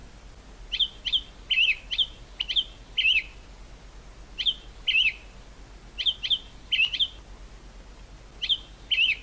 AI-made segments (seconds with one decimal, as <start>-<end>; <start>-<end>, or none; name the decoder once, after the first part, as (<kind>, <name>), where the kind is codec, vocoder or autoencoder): none

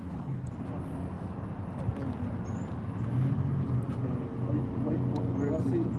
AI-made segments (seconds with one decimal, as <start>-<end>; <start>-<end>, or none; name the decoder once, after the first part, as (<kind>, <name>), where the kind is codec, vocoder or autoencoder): 0.0-0.5 (codec, HILCodec)

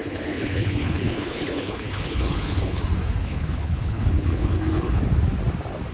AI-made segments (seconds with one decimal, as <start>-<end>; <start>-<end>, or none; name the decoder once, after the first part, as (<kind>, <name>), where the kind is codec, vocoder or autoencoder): 0.0-2.8 (codec, HILCodec); 3.2-5.0

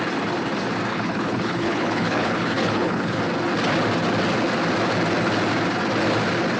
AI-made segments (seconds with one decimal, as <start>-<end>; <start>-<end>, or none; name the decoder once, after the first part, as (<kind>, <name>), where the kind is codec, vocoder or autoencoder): 0.9-3.2 (codec, HILCodec)

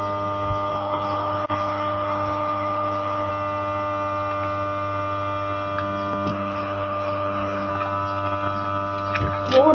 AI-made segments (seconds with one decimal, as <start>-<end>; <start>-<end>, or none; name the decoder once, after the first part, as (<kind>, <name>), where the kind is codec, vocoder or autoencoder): 0.7-3.3 (codec, HILCodec); 6.3-7.7

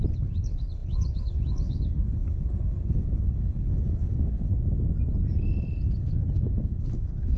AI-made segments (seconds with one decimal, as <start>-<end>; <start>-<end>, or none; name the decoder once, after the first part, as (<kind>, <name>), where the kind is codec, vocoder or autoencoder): 0.0-4.5 (codec, HILCodec); 6.0-7.4

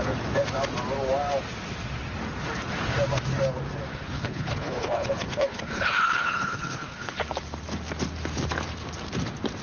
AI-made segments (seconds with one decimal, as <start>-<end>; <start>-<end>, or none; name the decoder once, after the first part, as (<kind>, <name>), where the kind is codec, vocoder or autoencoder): 3.9-7.2 (codec, HILCodec)

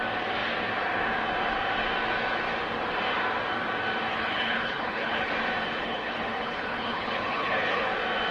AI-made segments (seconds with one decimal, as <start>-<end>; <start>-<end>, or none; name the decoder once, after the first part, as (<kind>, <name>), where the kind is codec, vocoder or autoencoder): 4.1-5.3 (codec, HILCodec); 5.8-7.9